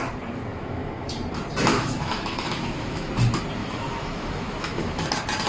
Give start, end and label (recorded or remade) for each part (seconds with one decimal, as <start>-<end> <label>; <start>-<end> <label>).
0.0-0.5 recorded; 0.5-1.1 remade; 1.1-1.7 recorded; 1.7-3.1 remade; 3.1-3.6 recorded; 3.6-5.1 remade; 5.1-5.5 recorded

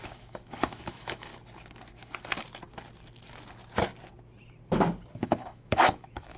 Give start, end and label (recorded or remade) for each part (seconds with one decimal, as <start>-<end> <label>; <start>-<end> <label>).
0.0-1.3 remade; 1.3-5.1 recorded; 5.1-6.4 remade

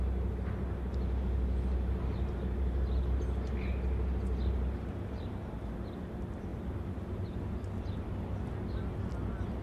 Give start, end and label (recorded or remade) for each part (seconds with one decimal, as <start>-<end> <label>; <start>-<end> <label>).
0.0-9.6 recorded

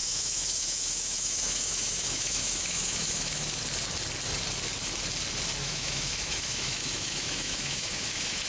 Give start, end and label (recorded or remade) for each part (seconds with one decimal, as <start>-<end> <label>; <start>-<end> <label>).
0.0-3.6 remade; 3.6-5.6 recorded; 5.6-8.5 remade

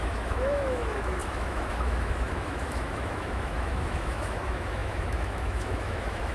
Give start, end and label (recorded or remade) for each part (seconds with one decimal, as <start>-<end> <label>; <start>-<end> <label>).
0.0-6.3 remade